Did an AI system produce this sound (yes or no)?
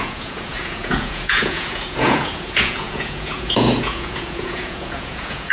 yes